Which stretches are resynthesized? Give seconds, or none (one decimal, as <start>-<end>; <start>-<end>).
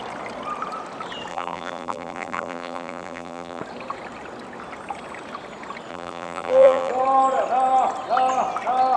1.3-3.6; 5.9-6.9